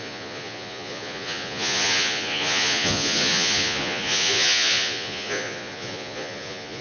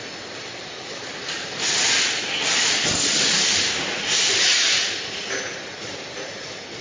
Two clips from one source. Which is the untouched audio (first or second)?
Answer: second